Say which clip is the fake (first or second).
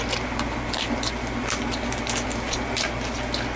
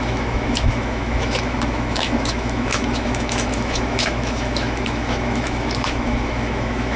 second